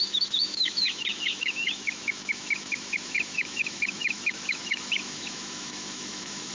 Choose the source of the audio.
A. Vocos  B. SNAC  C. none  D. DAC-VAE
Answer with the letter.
D